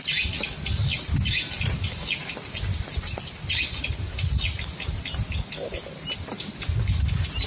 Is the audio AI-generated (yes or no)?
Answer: no